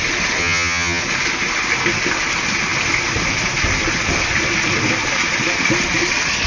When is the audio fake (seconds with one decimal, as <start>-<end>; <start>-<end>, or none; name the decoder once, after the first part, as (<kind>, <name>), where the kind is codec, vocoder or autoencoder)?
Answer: 0.4-1.0 (vocoder, HiFi-GAN)